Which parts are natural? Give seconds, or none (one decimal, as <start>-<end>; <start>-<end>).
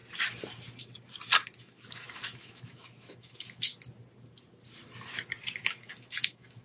0.0-1.6; 3.7-5.6